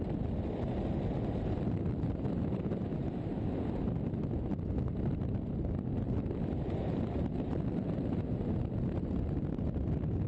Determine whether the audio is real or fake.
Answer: real